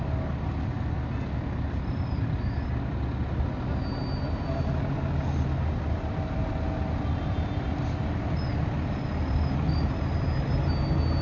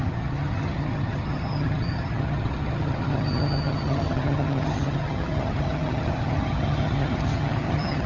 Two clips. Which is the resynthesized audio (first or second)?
second